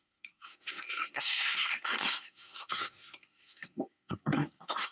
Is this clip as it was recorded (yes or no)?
no